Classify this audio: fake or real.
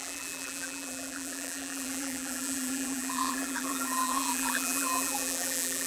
fake